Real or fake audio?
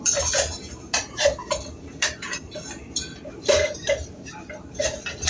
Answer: fake